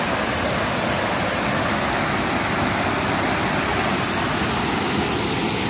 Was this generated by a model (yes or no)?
no